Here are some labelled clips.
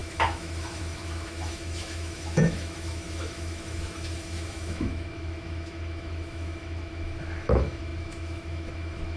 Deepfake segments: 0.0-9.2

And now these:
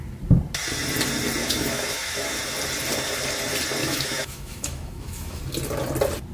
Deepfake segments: 1.4-2.4; 3.8-5.4

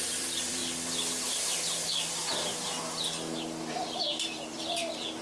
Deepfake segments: 0.0-0.6; 3.7-5.2

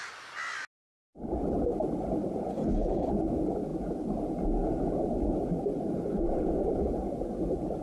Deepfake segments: 2.5-3.1

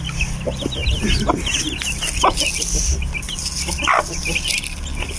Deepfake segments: none

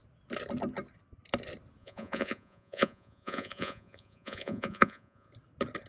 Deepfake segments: 1.8-5.3